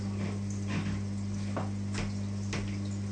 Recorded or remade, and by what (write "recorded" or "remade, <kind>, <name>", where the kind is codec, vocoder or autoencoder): recorded